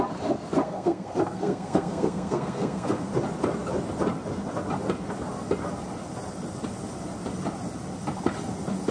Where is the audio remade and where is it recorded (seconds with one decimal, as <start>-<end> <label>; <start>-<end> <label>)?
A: 0.0-0.6 recorded; 0.6-3.1 remade; 3.1-8.9 recorded